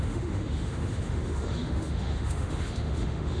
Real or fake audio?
fake